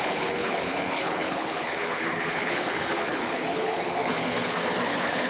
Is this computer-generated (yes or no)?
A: yes